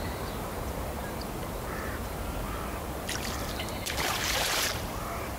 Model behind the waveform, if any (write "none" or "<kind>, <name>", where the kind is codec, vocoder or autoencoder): vocoder, BigVGAN v2